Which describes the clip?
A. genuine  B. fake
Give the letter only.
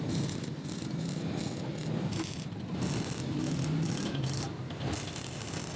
A